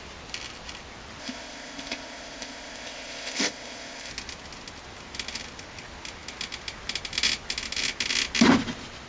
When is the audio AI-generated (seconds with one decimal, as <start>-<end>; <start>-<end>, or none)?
1.2-4.1

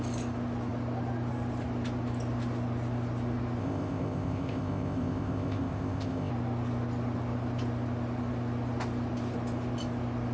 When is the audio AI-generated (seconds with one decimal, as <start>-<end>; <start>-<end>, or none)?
3.6-6.3

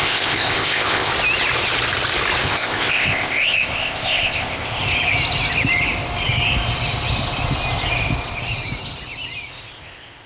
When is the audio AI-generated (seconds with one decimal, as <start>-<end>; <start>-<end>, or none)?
0.0-1.1; 2.4-4.8; 9.5-10.3